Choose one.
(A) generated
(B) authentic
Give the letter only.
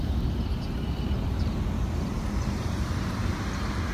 A